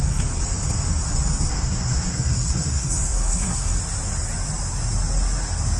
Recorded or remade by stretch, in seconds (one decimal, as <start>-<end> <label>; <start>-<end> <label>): 0.0-1.5 recorded; 1.5-3.8 remade; 3.8-5.8 recorded